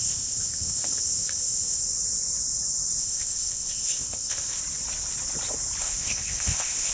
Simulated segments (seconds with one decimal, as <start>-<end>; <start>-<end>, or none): 0.0-1.8; 3.0-4.6; 5.8-6.9